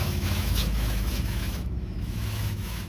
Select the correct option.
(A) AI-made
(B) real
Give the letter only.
A